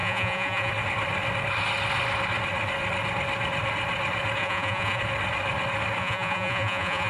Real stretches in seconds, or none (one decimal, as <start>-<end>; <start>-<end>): 0.7-4.4; 5.0-6.0